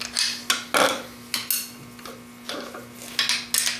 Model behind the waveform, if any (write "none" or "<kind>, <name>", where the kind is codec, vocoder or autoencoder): none